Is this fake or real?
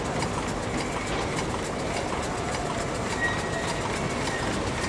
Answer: real